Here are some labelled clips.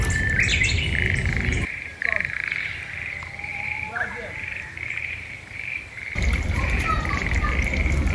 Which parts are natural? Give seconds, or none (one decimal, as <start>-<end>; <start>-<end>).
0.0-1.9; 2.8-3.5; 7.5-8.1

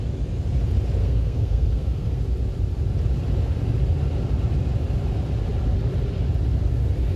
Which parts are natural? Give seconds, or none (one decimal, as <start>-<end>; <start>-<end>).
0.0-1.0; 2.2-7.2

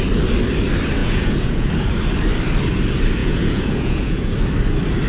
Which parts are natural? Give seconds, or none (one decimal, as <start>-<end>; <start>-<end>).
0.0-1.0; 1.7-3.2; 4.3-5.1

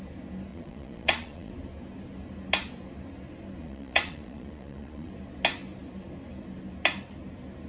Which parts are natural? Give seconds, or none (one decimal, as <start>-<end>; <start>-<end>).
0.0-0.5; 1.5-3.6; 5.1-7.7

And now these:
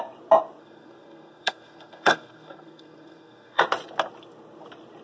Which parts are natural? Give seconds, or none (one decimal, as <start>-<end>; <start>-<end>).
0.0-0.6; 3.6-5.0

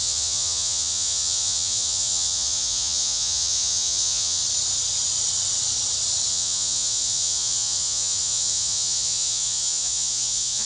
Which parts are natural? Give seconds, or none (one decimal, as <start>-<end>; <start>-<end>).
4.4-6.3

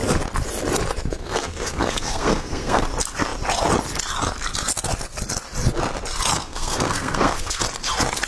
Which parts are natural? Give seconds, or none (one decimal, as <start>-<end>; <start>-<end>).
0.0-1.2; 2.8-6.3; 7.6-8.3